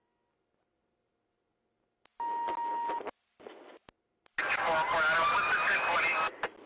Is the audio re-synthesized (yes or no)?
no